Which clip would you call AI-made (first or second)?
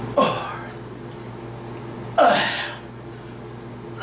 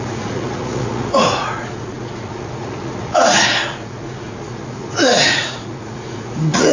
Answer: second